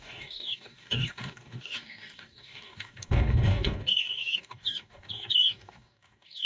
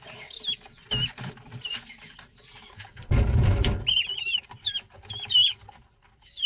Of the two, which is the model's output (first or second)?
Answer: first